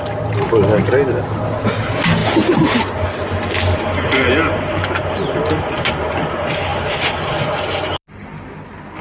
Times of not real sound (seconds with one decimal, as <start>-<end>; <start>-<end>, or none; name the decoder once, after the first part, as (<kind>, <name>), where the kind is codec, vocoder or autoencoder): none